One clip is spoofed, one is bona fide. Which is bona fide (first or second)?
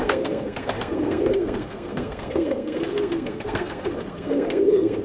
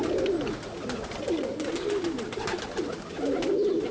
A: second